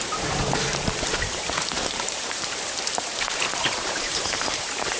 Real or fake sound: fake